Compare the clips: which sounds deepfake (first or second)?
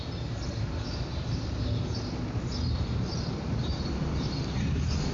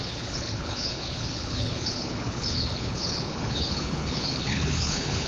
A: second